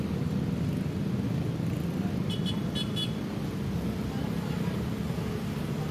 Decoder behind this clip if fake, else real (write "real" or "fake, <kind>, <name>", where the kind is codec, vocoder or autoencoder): real